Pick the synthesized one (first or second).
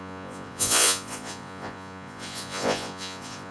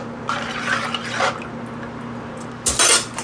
first